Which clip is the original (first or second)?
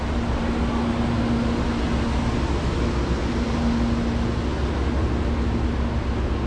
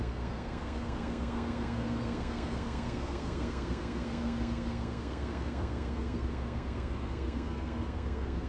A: first